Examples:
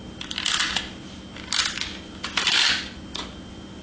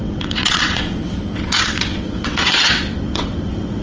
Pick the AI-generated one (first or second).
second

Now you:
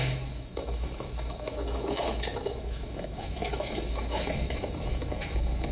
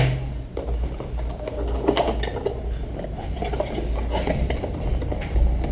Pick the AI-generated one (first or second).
first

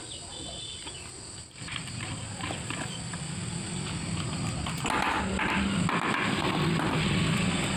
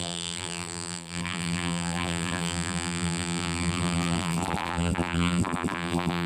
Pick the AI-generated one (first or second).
second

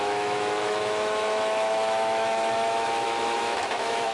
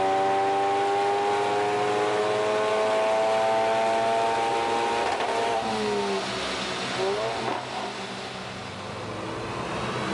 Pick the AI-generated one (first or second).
first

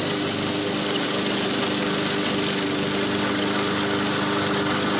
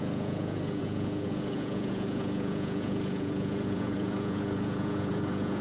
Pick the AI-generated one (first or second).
second